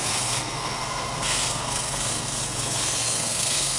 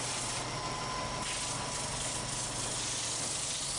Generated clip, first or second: first